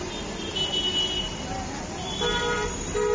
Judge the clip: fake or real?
real